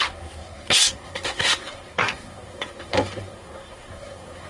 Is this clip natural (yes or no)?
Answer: no